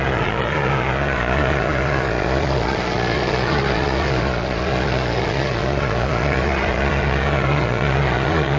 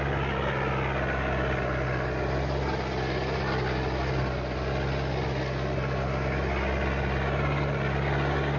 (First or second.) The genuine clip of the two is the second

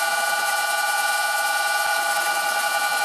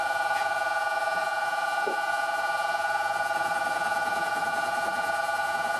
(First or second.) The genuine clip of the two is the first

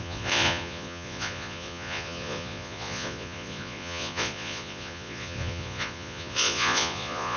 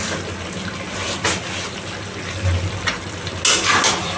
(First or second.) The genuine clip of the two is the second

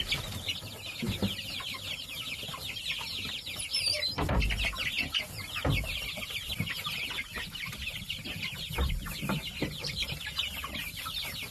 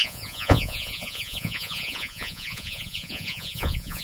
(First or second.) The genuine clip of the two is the first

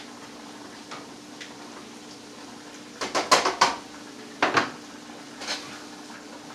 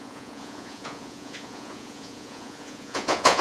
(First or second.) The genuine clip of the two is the first